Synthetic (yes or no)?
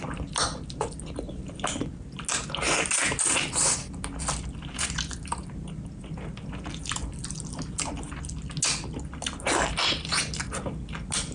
no